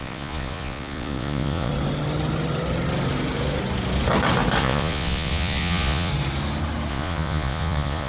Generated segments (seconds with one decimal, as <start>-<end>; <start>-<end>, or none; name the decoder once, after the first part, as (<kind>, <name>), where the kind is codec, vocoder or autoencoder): 0.0-1.7 (vocoder, Vocos); 4.6-6.1; 6.9-8.1